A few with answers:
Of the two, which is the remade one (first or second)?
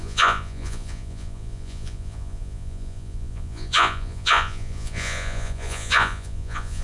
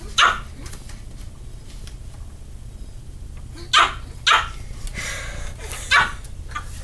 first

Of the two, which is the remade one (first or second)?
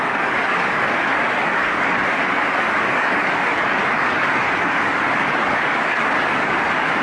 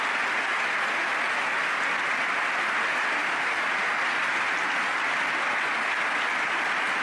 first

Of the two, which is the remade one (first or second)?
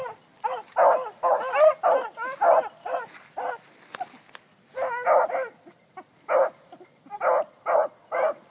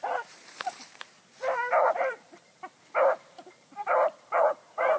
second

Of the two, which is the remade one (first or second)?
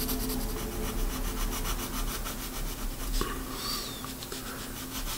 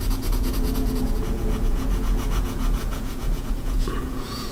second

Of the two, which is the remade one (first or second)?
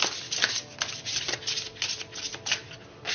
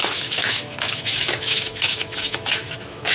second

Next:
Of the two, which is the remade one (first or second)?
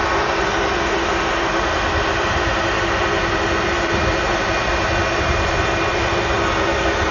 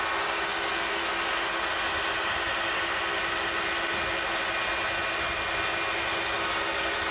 first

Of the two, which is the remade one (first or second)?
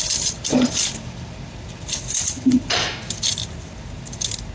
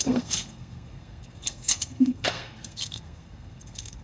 second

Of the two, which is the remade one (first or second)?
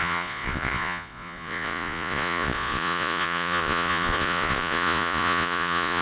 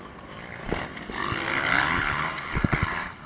first